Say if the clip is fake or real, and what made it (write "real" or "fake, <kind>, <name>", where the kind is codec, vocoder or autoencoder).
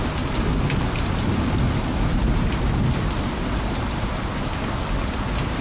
real